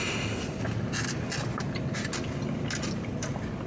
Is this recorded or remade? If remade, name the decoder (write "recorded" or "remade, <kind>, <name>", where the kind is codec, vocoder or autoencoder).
recorded